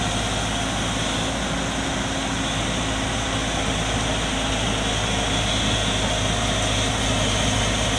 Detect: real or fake real